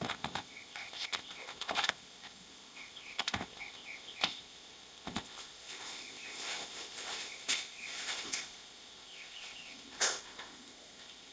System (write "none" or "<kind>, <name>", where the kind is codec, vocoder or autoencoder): codec, ZipCodec